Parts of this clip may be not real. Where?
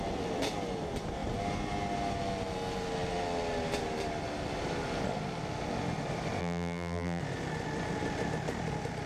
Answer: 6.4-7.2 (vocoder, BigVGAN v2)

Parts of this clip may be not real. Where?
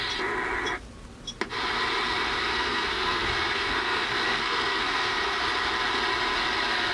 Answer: 2.5-5.4 (codec, SNAC)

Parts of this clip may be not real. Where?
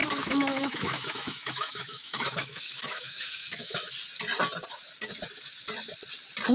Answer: 0.0-3.9 (autoencoder, DAC-VAE)